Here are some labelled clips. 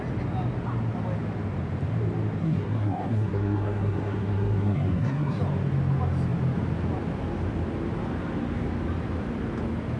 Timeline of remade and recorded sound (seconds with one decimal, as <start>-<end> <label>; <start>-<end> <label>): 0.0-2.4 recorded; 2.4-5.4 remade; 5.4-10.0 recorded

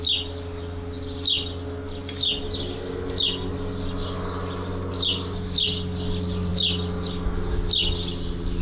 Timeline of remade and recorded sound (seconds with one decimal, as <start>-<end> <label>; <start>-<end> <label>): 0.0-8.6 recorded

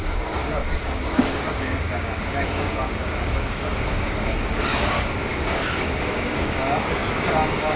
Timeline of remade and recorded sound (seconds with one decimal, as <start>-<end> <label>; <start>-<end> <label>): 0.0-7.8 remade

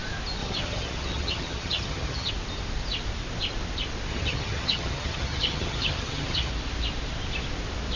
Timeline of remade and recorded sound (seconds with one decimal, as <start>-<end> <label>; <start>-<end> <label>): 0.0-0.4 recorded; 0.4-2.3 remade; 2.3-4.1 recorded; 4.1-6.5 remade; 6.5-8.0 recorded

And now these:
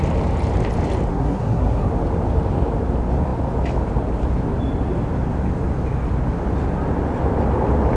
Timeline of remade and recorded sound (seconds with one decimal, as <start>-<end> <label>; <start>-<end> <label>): 0.0-1.1 recorded; 1.1-1.9 remade; 1.9-8.0 recorded

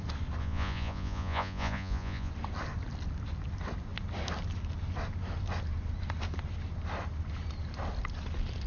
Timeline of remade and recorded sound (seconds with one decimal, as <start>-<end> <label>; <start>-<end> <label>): 0.0-0.4 recorded; 0.4-2.3 remade; 2.3-8.7 recorded

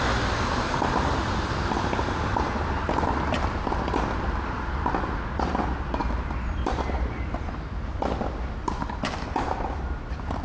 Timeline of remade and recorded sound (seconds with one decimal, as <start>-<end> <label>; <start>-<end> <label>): 0.0-10.4 recorded